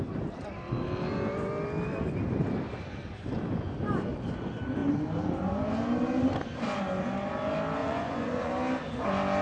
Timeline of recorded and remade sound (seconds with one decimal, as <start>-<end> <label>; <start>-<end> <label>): 0.0-7.8 recorded; 7.8-8.5 remade; 8.5-9.4 recorded